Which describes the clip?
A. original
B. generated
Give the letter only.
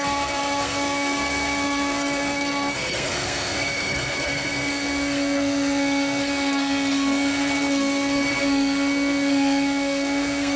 B